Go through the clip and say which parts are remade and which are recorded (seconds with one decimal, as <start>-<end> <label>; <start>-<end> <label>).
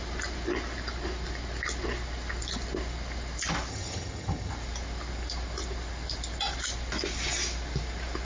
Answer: 0.0-3.7 recorded; 3.7-4.5 remade; 4.5-8.2 recorded